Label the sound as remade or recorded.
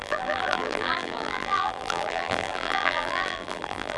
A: remade